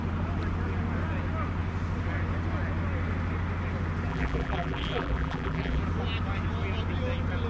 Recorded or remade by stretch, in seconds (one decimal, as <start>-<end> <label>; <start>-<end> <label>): 0.0-4.1 recorded; 4.1-5.8 remade; 5.8-7.5 recorded